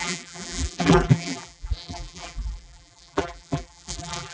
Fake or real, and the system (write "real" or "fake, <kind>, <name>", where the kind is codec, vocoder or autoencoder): fake, vocoder, BigVGAN v2